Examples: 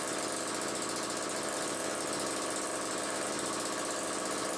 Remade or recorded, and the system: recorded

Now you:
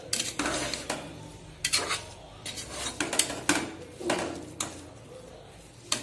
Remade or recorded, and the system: recorded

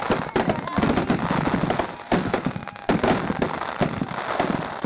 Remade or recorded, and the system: recorded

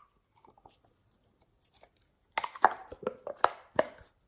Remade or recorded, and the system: recorded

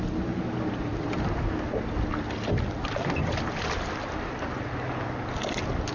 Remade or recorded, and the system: recorded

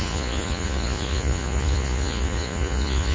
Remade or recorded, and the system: remade, vocoder, Vocos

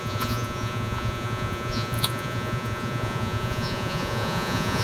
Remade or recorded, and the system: remade, vocoder, Vocos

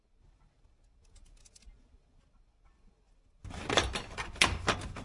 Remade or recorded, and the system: recorded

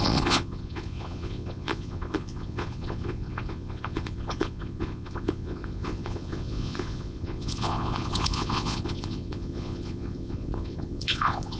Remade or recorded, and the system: remade, vocoder, Vocos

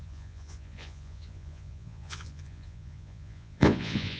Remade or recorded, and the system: remade, vocoder, Vocos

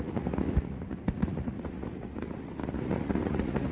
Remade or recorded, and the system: remade, vocoder, Vocos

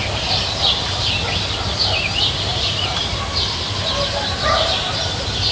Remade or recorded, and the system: recorded